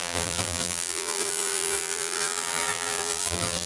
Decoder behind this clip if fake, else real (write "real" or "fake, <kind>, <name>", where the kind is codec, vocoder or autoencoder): fake, vocoder, BigVGAN v2